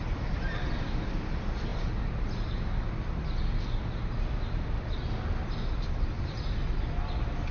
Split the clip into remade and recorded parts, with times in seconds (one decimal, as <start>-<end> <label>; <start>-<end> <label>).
0.0-7.5 recorded